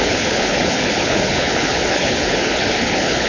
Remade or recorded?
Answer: remade